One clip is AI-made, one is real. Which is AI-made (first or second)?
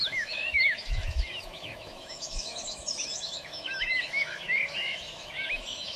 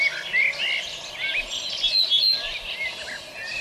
first